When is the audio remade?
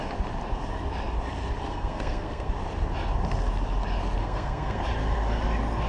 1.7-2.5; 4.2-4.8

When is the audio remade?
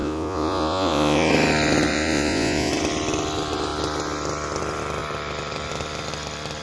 0.0-1.3; 1.9-2.7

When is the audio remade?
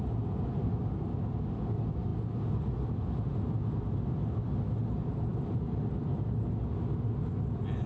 none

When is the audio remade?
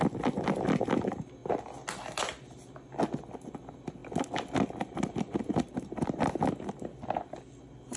none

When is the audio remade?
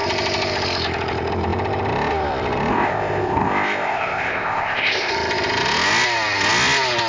2.7-5.1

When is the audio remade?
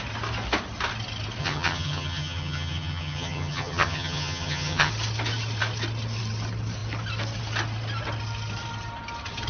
1.4-4.9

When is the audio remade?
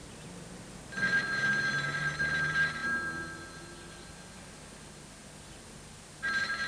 none